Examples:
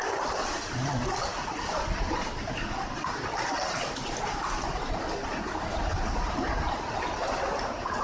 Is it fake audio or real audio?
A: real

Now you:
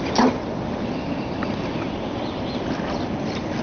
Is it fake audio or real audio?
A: real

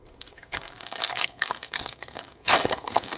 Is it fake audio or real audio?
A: fake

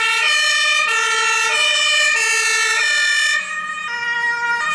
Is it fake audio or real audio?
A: real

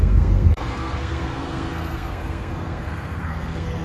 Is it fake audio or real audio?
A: fake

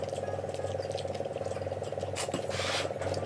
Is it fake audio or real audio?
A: real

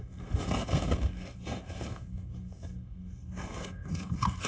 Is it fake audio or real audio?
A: fake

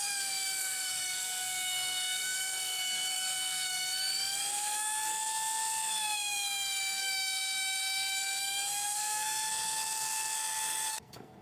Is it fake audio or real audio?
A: fake